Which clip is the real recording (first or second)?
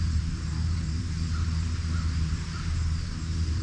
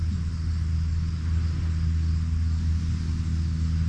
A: second